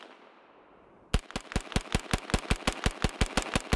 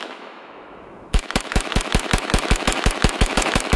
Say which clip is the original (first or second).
first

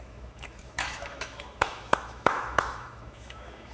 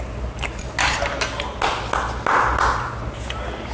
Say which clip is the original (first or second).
second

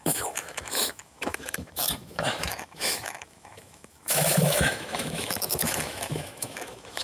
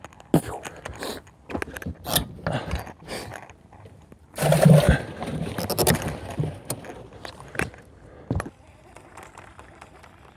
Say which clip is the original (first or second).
second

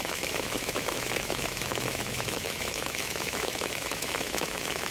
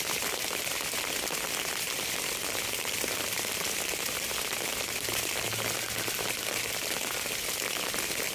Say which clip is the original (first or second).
second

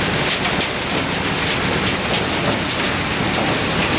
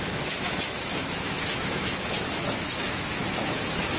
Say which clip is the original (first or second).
first